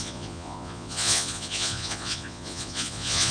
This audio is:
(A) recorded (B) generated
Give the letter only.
B